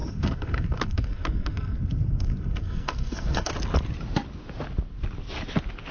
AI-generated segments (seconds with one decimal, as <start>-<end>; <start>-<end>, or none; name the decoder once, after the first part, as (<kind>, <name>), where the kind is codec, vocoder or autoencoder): 0.0-3.5 (codec, SNAC)